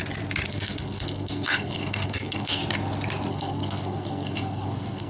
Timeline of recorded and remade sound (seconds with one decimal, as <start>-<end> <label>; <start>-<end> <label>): 0.0-0.5 recorded; 0.5-2.6 remade; 2.6-3.3 recorded; 3.3-5.1 remade